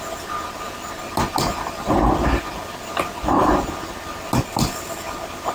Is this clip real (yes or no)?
yes